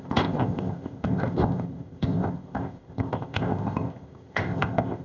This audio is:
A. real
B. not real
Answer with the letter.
B